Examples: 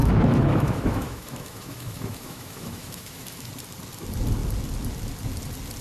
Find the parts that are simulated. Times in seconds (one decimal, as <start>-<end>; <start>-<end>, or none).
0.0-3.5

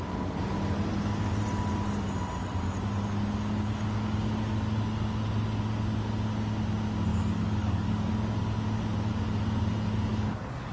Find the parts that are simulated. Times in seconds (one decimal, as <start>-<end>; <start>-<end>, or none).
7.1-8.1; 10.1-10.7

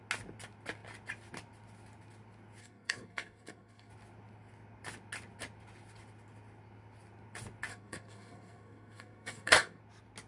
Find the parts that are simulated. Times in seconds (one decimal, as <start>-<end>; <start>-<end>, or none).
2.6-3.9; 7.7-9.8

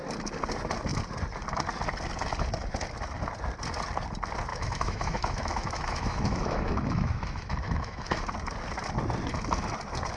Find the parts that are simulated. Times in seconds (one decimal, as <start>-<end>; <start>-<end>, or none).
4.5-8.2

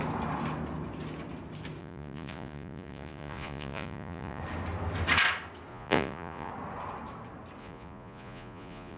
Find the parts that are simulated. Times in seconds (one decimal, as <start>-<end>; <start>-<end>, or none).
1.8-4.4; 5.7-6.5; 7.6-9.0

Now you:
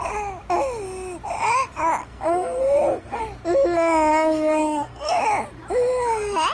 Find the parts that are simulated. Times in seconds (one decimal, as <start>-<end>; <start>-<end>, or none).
2.0-3.2; 4.1-5.2

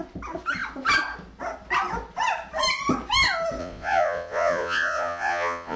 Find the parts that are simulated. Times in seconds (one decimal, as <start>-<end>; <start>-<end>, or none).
3.6-5.8

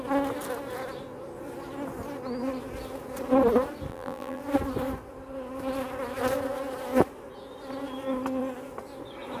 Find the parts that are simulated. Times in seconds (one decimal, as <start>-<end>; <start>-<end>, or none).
3.9-4.4